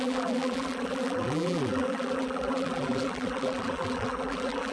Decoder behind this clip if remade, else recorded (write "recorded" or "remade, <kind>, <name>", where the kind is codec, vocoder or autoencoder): remade, vocoder, BigVGAN v2